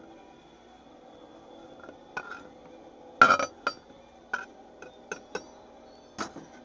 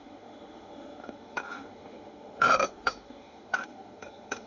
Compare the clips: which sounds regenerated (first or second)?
second